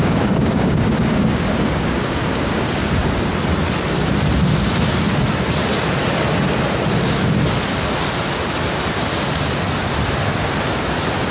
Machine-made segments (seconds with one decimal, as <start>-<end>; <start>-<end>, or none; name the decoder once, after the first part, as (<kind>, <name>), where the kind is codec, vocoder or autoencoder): 0.0-2.9 (codec, DAC)